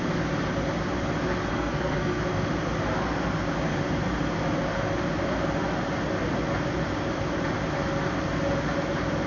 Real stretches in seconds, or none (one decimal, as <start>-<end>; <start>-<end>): 0.0-1.5; 2.2-9.3